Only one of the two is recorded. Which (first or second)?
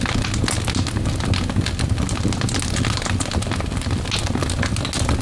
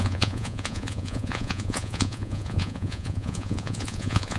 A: first